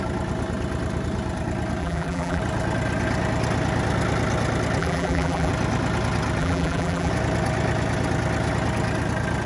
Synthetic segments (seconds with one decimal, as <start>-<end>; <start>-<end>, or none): 1.8-2.4; 4.8-5.5; 6.4-7.1